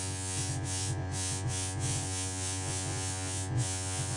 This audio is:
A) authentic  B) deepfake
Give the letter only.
B